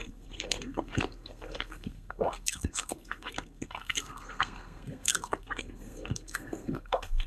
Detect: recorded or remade remade